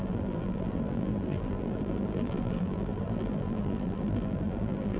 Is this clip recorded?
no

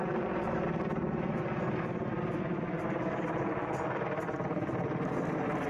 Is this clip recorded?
yes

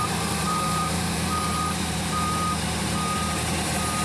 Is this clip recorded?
no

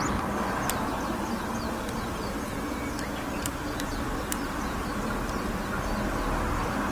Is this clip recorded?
yes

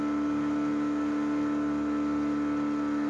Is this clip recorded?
yes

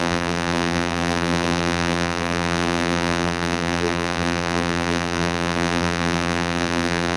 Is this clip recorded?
no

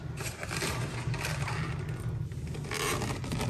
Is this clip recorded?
yes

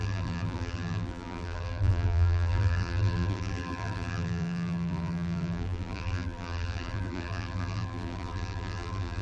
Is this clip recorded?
no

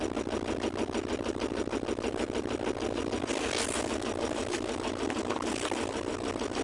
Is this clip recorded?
yes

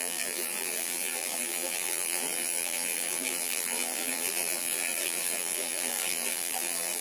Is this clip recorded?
no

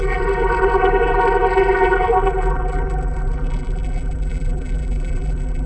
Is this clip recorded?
no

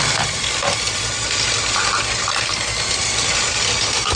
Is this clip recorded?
yes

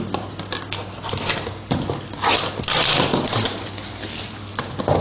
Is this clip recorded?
yes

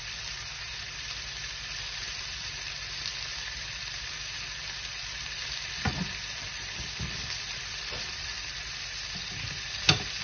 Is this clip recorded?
no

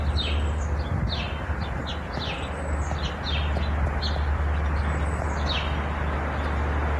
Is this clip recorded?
yes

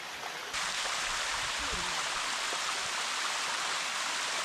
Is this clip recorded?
yes